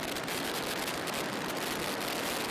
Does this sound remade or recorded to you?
recorded